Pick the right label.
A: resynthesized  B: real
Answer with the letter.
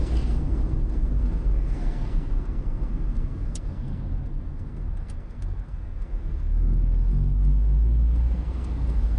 A